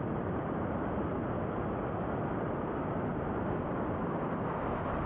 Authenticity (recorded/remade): recorded